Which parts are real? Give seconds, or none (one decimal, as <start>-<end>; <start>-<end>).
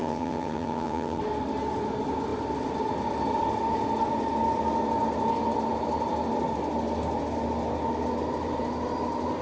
1.2-9.4